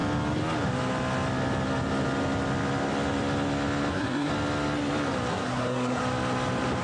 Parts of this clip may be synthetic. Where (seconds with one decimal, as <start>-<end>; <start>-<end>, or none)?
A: 3.9-4.3; 5.3-6.0